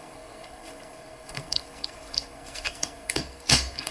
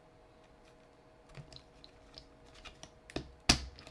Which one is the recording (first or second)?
second